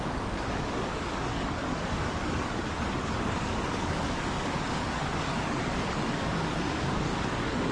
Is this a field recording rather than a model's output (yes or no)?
no